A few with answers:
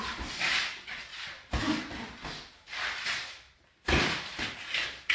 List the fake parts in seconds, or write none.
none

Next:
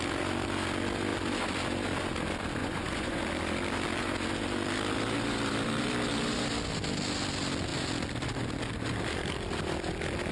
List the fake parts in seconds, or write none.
2.6-3.2 (vocoder, Vocos)

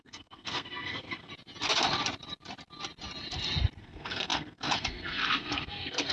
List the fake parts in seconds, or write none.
0.0-1.3 (codec, SNAC); 3.8-6.1

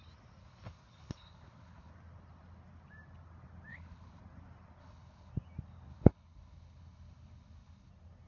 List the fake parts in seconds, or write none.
0.4-1.9 (codec, HILCodec); 3.7-4.2; 4.8-5.3; 5.9-7.9

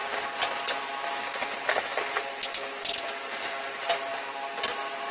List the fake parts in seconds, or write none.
none